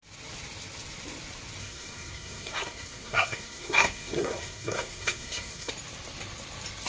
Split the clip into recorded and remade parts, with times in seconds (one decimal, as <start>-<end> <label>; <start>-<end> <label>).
0.0-1.6 recorded; 1.6-5.7 remade; 5.7-6.9 recorded